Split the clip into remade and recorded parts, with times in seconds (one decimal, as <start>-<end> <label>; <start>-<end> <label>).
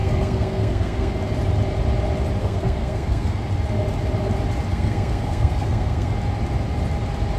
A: 0.0-1.1 remade; 1.1-2.4 recorded; 2.4-3.4 remade; 3.4-4.7 recorded; 4.7-6.1 remade; 6.1-7.4 recorded